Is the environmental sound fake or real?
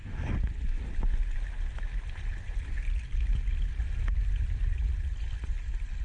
real